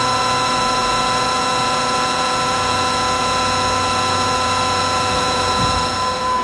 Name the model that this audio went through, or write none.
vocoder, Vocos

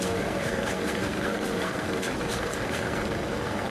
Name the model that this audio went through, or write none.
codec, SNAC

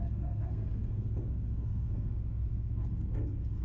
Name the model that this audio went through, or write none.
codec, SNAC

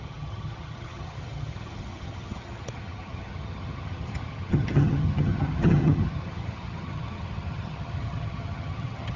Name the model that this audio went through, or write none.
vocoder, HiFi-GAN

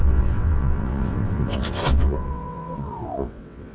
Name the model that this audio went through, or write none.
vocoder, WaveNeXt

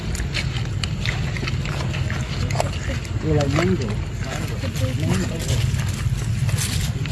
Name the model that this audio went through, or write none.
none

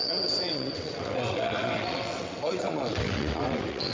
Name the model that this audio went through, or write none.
vocoder, WaveNeXt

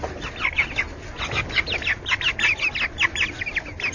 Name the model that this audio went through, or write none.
none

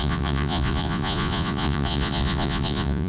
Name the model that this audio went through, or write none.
vocoder, Vocos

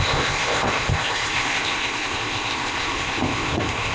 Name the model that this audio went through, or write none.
codec, ZipCodec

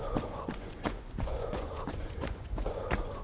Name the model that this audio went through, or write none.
vocoder, Vocos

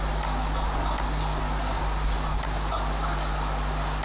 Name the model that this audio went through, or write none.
none